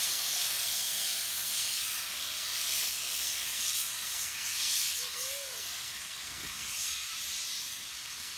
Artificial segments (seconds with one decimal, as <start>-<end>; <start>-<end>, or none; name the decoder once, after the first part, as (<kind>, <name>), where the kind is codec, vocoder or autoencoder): 0.0-7.1 (codec, SNAC); 7.6-8.4